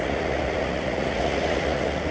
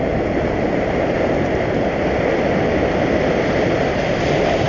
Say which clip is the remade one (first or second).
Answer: first